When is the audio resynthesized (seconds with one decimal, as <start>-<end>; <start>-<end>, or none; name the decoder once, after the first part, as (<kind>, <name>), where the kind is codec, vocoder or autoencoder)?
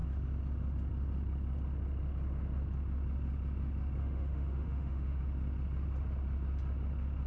4.0-5.2 (autoencoder, DAC-VAE)